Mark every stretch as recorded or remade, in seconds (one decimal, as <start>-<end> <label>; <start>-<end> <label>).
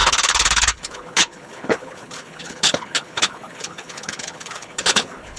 0.0-5.4 remade